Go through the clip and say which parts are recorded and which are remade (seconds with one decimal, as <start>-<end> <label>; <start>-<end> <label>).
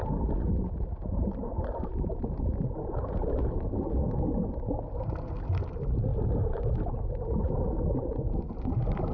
0.0-6.1 recorded; 6.1-8.4 remade; 8.4-9.1 recorded